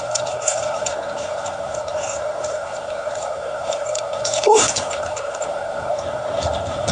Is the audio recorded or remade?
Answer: remade